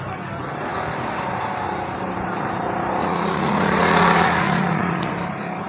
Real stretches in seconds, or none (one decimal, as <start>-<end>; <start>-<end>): 0.0-3.0; 5.1-5.7